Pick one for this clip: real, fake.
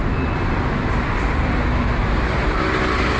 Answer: real